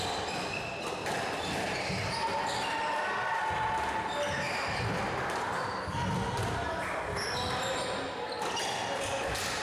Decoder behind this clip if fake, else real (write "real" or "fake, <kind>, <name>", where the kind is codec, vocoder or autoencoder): real